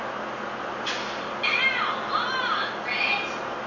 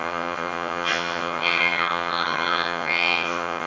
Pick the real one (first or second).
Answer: first